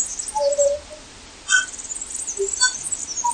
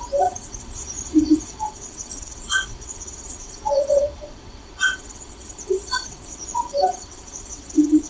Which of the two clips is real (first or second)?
first